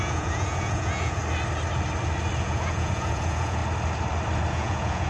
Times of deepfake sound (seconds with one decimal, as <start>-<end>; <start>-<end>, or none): 0.0-1.2; 2.4-3.6; 4.5-5.1